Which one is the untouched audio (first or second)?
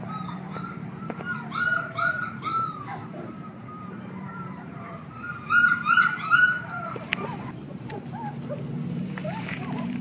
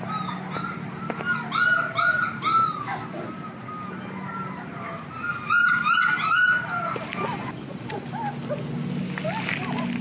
second